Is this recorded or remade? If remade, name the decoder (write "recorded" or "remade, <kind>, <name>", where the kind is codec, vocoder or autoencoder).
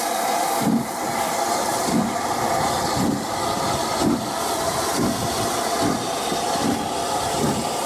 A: remade, vocoder, BigVGAN v2